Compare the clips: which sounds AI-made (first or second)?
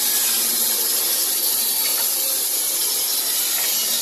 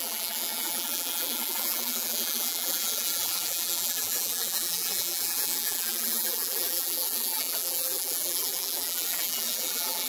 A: second